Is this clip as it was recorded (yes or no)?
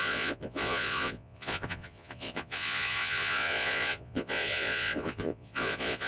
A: no